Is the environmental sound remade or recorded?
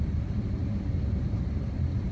recorded